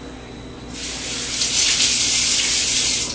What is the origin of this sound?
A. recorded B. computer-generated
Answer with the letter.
A